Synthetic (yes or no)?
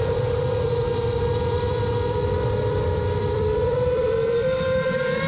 yes